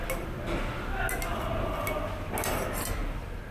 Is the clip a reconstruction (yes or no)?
no